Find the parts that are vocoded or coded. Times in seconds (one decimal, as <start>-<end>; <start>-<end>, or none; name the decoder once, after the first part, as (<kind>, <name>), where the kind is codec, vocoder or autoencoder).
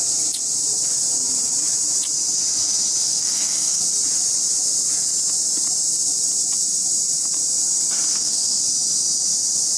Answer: 3.0-3.8 (codec, SNAC); 8.1-8.6